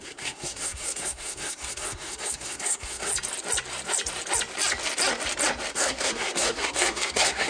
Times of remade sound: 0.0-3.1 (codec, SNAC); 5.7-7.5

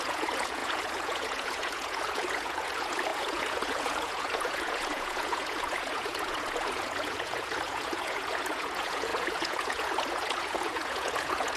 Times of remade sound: 0.0-11.6 (vocoder, Vocos)

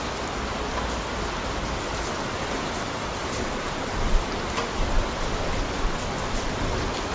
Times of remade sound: 3.2-4.1 (vocoder, BigVGAN v2)

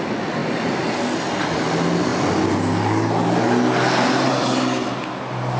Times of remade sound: none

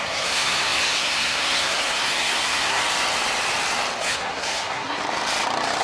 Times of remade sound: 0.0-2.8 (codec, SNAC); 4.0-5.0

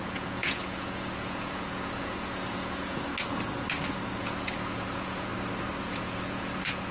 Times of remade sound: 0.0-3.1 (vocoder, Vocos); 4.2-5.3; 5.8-6.9